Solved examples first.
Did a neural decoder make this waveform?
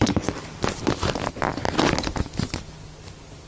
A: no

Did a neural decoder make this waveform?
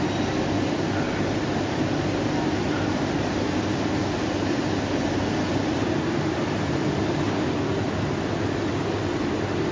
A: no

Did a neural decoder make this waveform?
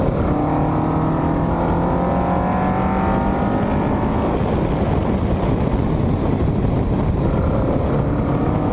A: no